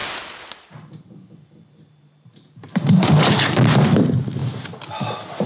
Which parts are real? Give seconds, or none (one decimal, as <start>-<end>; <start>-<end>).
3.3-5.5

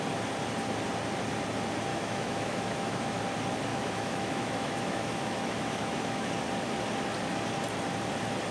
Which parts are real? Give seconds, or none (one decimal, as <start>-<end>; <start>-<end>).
0.0-1.9; 3.2-3.7; 6.3-8.5

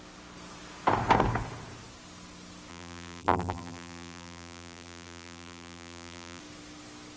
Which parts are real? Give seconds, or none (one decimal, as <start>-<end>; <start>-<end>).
0.0-2.7; 6.4-7.2

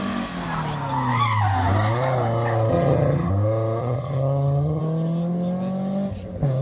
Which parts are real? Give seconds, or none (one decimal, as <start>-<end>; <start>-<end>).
0.0-2.7; 3.3-3.8; 4.8-6.6

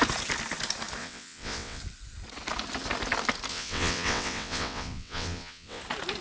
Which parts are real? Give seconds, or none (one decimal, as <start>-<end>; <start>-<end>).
0.0-1.0; 1.8-3.5; 5.8-6.2

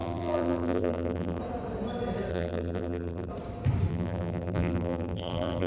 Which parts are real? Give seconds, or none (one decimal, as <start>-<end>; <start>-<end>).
1.4-2.3; 3.3-3.9

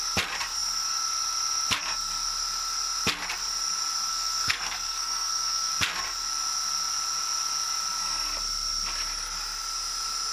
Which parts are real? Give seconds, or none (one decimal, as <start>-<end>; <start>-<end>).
0.0-4.1; 5.7-10.3